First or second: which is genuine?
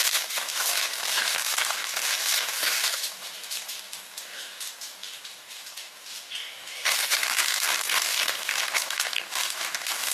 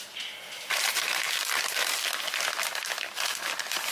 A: second